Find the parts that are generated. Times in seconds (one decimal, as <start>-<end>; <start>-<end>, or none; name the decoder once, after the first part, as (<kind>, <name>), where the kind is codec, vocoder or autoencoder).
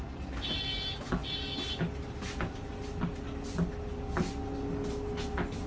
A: none